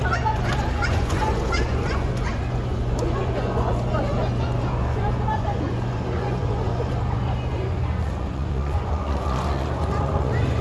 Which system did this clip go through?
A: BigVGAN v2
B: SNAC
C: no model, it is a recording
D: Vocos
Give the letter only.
D